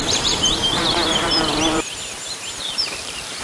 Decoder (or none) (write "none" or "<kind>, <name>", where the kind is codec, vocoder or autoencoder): vocoder, BigVGAN v2